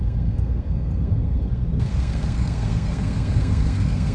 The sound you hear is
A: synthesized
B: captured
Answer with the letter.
A